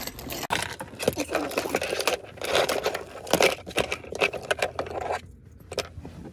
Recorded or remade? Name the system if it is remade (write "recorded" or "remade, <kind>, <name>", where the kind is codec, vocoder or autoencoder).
recorded